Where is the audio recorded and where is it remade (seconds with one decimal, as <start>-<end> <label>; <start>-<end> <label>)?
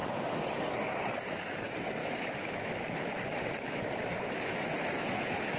0.0-2.0 recorded; 2.0-5.6 remade